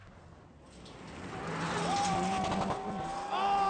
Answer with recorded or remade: recorded